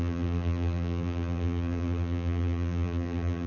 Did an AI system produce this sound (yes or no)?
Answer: yes